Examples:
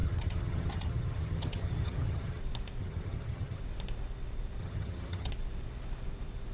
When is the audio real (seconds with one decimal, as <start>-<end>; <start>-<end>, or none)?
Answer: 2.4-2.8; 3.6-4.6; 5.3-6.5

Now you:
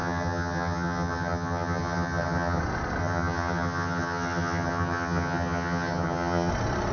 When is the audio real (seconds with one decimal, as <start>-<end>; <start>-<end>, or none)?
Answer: 2.6-3.0; 6.5-6.9

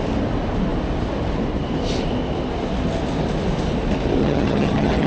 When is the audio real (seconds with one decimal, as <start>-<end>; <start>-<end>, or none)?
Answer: 0.0-4.2

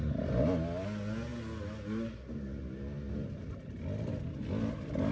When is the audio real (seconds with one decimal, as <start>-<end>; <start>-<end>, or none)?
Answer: 0.0-5.1

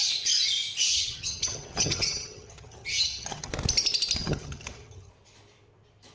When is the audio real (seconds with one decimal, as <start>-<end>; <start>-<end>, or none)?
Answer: 0.0-0.9; 3.5-4.2; 5.1-6.1

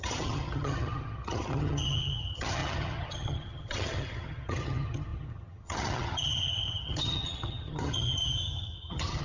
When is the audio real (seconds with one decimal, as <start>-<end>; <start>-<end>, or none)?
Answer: none

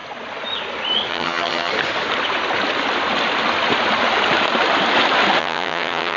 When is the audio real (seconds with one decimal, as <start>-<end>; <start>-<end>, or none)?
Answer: 0.0-1.1; 1.7-5.4

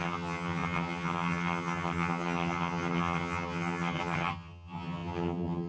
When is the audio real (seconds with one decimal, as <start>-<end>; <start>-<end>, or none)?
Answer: none